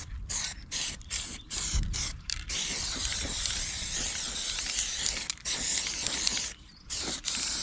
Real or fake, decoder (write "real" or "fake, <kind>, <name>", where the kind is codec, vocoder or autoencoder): fake, vocoder, BigVGAN v2